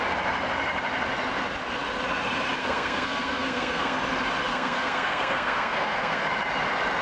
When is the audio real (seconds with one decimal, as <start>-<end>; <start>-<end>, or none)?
0.0-2.6; 4.0-4.5; 6.2-7.0